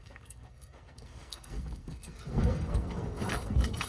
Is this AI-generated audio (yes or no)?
yes